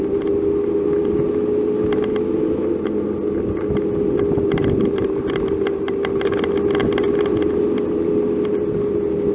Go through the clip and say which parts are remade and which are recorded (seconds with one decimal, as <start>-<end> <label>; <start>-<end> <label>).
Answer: 0.0-9.3 recorded